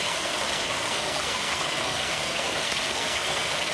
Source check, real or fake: fake